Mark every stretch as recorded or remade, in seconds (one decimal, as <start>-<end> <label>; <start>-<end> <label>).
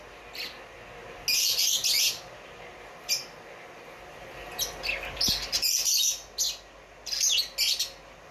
0.0-8.3 recorded